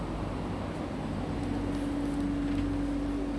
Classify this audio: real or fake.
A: real